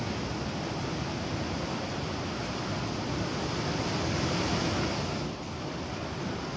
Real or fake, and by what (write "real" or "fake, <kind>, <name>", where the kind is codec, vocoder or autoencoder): real